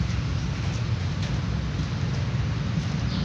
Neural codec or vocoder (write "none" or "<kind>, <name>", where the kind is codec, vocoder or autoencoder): none